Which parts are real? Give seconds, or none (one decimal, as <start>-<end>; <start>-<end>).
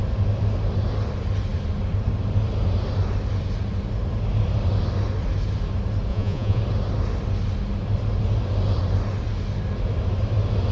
0.0-6.1; 6.6-10.7